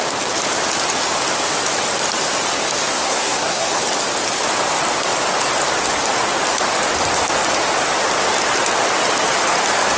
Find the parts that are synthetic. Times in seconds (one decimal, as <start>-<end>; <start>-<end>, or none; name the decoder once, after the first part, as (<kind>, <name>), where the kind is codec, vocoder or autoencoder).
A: 2.9-3.8 (codec, SNAC)